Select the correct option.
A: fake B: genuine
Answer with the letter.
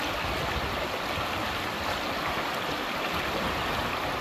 B